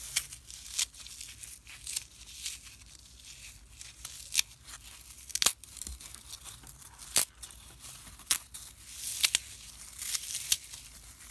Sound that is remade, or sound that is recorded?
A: recorded